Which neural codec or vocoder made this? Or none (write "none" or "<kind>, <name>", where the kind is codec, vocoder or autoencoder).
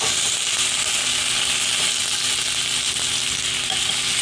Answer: none